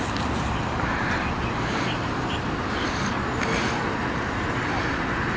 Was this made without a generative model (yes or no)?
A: no